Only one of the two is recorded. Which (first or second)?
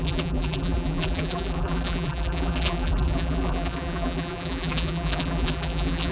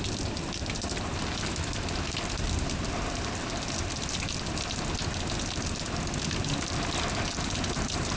second